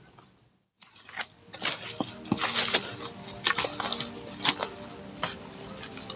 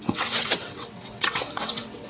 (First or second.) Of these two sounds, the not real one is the second